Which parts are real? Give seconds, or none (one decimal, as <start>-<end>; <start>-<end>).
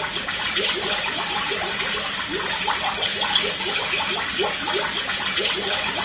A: 3.1-4.7